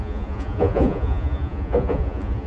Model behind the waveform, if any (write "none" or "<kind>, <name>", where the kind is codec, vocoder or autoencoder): vocoder, Vocos